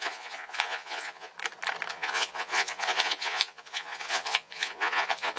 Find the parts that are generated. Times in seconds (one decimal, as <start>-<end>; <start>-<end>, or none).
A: 0.0-1.3; 1.9-5.4